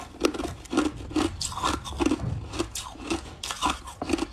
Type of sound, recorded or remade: recorded